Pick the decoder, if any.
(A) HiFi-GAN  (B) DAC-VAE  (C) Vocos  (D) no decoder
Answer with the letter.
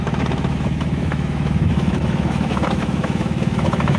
B